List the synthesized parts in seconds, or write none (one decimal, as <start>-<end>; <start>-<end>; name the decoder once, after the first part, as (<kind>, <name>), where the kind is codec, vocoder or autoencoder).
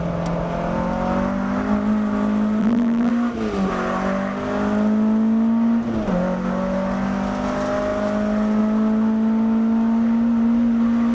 2.6-3.1 (vocoder, BigVGAN v2)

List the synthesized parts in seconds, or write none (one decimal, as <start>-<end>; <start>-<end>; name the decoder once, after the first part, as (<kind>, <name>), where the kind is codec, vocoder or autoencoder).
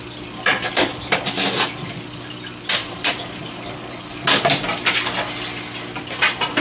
2.8-3.7 (vocoder, BigVGAN v2)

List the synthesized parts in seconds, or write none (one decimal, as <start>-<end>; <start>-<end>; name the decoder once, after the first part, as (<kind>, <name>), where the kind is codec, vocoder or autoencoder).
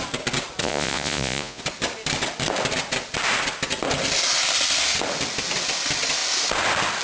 0.6-1.6 (vocoder, Vocos)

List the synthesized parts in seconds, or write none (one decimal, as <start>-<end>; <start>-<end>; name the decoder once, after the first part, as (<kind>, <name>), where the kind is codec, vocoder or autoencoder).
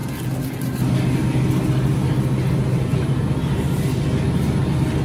none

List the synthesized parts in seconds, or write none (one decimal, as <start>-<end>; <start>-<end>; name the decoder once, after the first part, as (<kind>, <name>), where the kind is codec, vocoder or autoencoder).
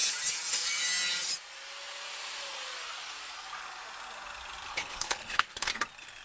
4.7-5.7 (codec, HILCodec)